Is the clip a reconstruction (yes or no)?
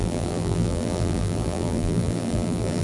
yes